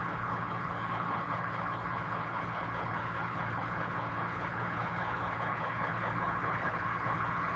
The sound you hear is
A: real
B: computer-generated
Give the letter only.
B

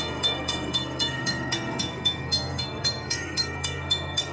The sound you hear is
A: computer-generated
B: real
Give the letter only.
A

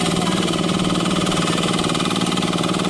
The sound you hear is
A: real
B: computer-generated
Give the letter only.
B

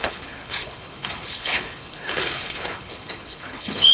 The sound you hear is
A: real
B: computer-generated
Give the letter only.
B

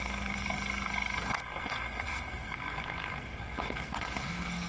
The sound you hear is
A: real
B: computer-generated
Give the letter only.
B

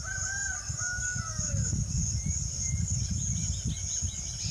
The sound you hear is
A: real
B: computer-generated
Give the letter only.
A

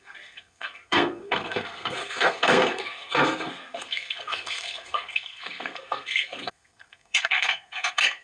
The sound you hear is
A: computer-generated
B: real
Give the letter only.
A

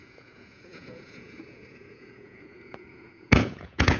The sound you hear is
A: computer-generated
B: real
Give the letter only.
A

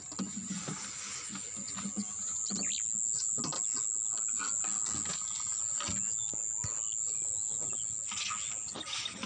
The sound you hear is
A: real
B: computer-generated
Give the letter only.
A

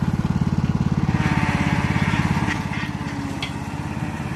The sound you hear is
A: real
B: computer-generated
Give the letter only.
A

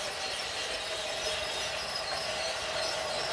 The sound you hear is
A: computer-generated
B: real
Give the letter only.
B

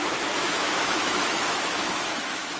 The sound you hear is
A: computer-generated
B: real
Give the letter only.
A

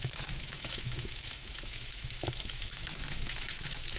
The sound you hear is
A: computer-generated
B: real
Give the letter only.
A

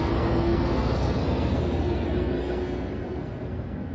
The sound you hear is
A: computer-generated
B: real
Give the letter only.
A